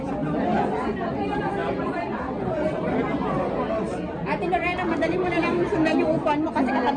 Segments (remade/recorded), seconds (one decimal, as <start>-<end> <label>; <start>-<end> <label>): 0.0-1.6 recorded; 1.6-5.4 remade; 5.4-7.0 recorded